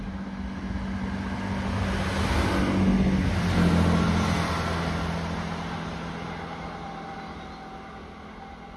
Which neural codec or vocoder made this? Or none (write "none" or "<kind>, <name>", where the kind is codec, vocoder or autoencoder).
none